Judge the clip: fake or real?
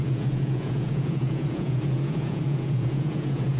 fake